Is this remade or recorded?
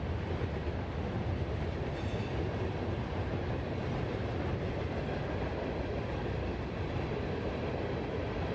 recorded